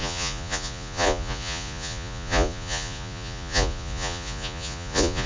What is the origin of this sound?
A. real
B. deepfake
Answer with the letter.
B